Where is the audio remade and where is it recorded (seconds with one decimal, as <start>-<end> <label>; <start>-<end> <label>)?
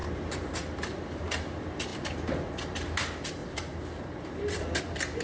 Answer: 0.0-1.2 remade; 1.2-3.4 recorded; 3.4-4.8 remade; 4.8-5.2 recorded